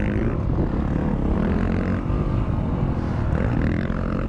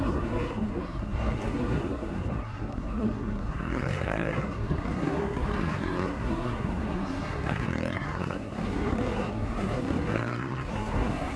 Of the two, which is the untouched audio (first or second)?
first